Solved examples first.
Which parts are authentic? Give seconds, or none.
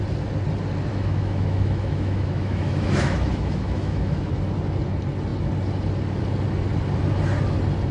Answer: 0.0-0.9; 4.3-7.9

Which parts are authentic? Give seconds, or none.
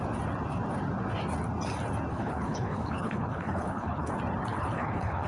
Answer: 0.0-2.1; 4.1-4.5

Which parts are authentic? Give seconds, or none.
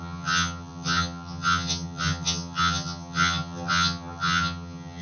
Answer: none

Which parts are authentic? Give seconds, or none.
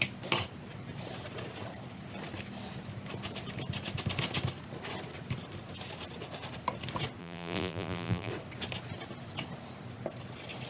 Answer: 0.0-7.2; 8.3-10.7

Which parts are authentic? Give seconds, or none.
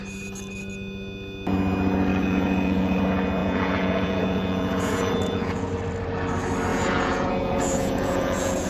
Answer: 0.0-2.1; 3.0-3.4; 5.7-6.7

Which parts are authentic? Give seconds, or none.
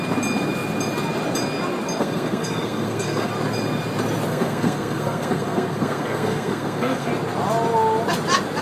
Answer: 0.0-2.0; 3.3-4.3; 7.1-8.6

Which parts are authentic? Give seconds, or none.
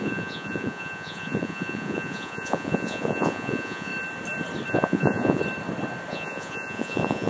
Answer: 3.9-4.7; 5.4-6.1